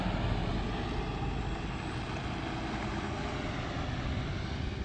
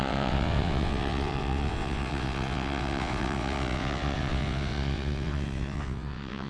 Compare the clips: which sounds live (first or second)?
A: first